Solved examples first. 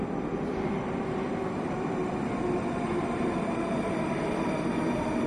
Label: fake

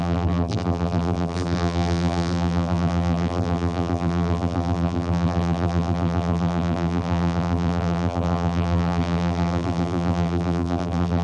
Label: fake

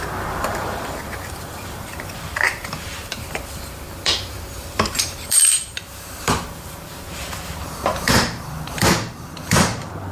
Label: fake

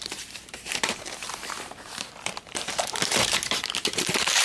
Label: fake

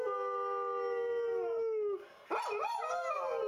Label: real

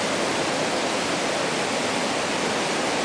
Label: fake